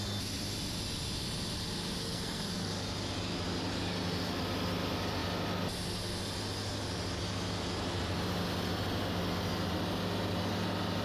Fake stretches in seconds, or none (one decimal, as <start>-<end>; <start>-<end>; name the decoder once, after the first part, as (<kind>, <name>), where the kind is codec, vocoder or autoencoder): 2.0-2.7 (codec, SNAC)